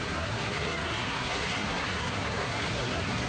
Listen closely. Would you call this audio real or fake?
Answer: fake